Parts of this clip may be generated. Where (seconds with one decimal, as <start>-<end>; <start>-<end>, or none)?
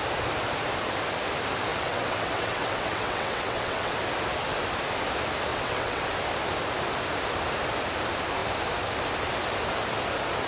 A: 1.7-3.9; 5.5-6.0